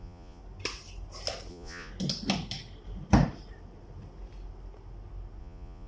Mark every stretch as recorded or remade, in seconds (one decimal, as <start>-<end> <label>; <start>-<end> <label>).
0.0-0.4 remade; 0.4-1.5 recorded; 1.5-1.9 remade; 1.9-5.4 recorded; 5.4-5.9 remade